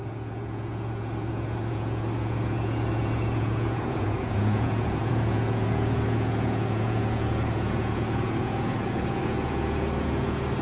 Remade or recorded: remade